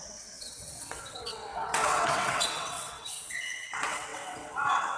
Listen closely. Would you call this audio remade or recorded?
remade